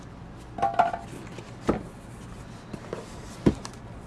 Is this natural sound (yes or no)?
yes